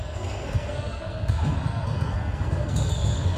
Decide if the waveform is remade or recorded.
remade